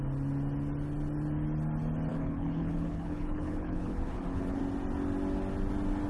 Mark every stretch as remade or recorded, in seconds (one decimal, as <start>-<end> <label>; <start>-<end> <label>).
0.0-2.1 recorded; 2.1-4.6 remade; 4.6-6.1 recorded